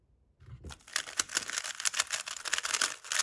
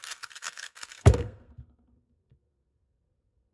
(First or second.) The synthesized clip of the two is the second